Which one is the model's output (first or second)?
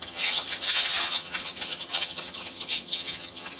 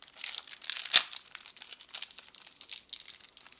first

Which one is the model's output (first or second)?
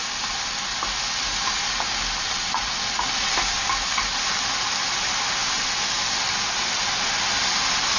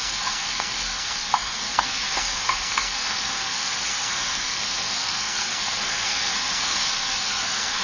second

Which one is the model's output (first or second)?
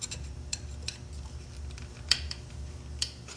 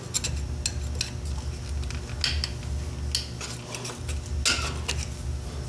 first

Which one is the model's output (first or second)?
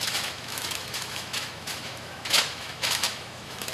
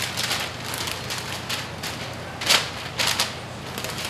first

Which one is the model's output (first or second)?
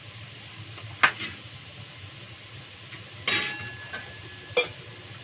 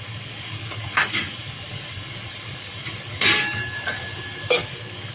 second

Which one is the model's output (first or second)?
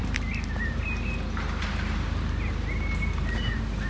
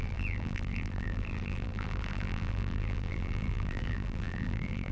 second